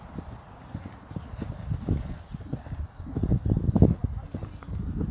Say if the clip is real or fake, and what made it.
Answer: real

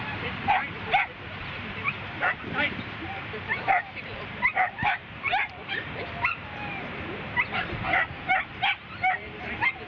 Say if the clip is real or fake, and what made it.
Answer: fake, vocoder, BigVGAN v2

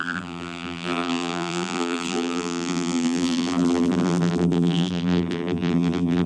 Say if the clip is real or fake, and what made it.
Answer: fake, vocoder, BigVGAN v2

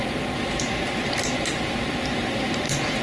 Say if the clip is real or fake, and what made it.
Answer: fake, vocoder, BigVGAN v2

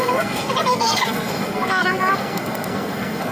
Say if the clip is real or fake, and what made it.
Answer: fake, codec, SNAC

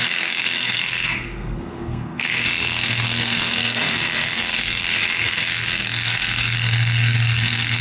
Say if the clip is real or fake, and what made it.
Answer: fake, codec, SNAC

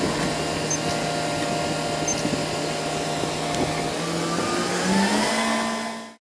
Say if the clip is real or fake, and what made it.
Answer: real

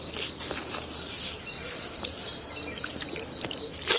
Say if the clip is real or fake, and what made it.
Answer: real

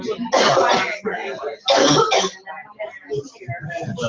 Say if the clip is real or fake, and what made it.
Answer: real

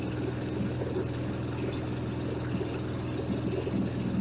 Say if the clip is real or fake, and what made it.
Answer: real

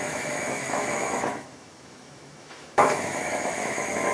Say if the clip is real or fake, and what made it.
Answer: fake, autoencoder, DAC-VAE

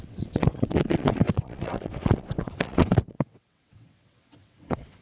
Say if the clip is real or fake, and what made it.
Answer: fake, vocoder, WaveNeXt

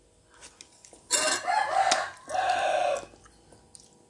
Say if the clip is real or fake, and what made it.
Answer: real